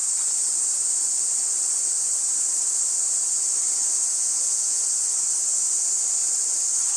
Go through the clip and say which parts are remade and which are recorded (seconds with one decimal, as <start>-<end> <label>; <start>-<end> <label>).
0.0-4.1 recorded; 4.1-4.8 remade; 4.8-7.0 recorded